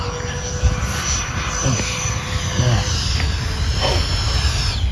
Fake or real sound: real